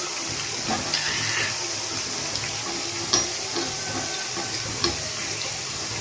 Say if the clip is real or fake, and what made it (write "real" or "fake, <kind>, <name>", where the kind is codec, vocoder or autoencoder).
real